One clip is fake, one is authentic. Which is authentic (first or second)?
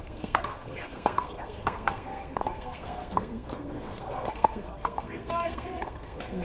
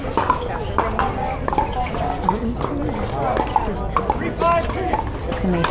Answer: second